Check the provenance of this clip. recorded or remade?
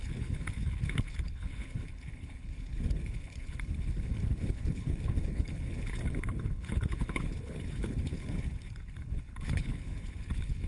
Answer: remade